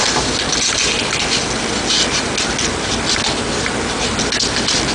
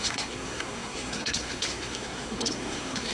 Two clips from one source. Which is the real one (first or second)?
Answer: first